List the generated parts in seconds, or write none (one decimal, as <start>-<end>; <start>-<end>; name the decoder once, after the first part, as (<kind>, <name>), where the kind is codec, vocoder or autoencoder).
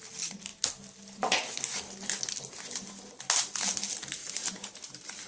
4.2-5.3 (vocoder, BigVGAN v2)